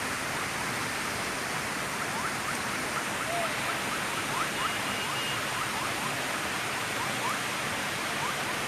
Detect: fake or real real